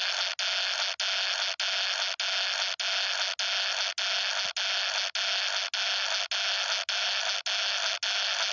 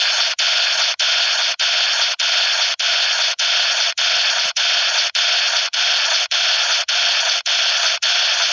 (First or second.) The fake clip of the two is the second